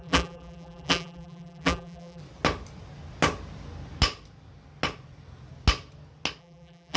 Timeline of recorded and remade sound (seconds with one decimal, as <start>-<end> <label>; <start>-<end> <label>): 0.0-2.2 remade; 2.2-6.4 recorded; 6.4-7.0 remade

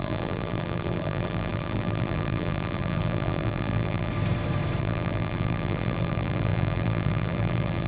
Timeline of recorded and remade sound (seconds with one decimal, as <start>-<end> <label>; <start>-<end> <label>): 0.0-4.1 remade; 4.1-4.8 recorded; 4.8-7.9 remade

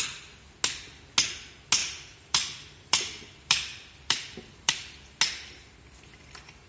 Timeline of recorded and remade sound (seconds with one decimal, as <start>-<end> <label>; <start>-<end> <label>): 0.0-1.8 recorded; 1.8-4.7 remade; 4.7-6.7 recorded

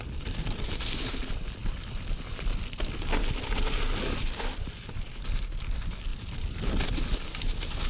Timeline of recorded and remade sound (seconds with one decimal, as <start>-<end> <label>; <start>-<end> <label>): 0.0-6.1 recorded; 6.1-7.4 remade; 7.4-7.9 recorded

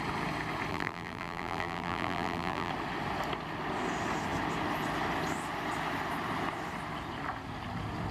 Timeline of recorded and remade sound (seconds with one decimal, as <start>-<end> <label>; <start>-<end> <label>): 0.0-0.7 recorded; 0.7-2.7 remade; 2.7-8.1 recorded